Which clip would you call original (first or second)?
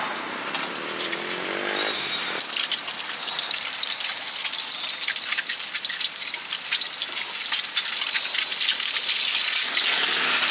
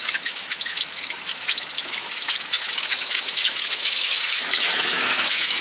first